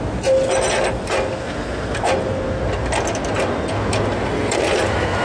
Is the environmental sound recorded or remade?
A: recorded